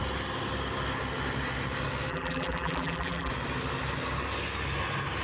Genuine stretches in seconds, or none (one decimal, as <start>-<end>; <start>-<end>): 0.0-2.1; 3.3-5.2